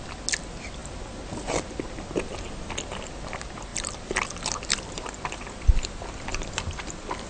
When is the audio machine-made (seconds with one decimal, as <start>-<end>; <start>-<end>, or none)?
3.7-5.9